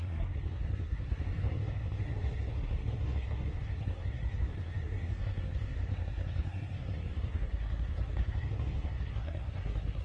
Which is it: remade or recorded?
remade